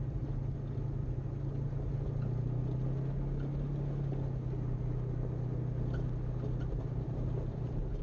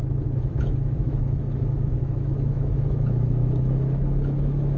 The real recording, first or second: first